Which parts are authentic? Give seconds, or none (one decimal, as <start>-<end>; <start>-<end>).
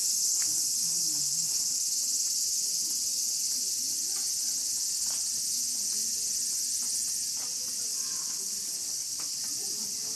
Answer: 1.7-7.9; 9.4-10.2